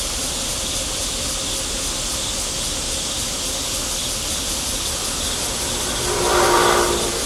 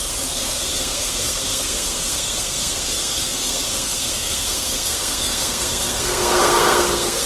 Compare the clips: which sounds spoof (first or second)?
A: second